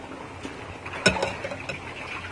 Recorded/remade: recorded